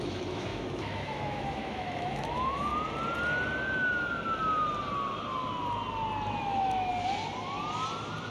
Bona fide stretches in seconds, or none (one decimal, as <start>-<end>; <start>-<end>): 2.7-6.4; 6.9-8.3